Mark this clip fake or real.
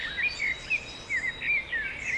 real